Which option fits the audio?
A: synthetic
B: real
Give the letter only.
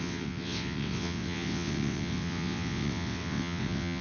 A